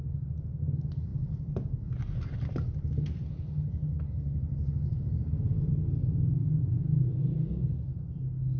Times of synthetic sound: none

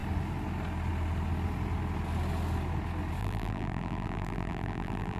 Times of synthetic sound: 3.2-5.2 (vocoder, BigVGAN v2)